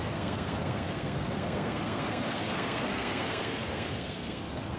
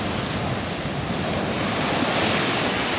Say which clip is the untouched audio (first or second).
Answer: second